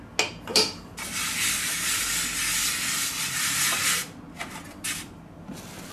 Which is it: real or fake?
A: real